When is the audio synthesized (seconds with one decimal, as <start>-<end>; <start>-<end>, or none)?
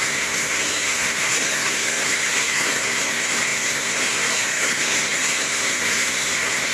0.0-6.7